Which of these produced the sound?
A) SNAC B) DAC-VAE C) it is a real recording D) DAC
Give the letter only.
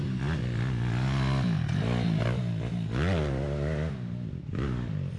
C